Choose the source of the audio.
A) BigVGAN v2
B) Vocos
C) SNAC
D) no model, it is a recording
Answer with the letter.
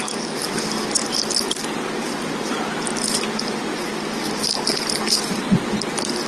A